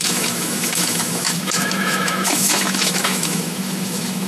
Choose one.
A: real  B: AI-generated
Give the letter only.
B